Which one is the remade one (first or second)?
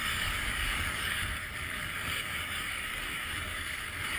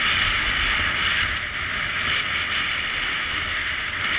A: first